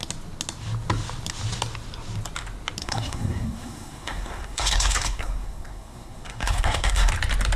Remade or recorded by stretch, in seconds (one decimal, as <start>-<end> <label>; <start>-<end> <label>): 0.0-2.8 recorded; 2.8-7.1 remade; 7.1-7.6 recorded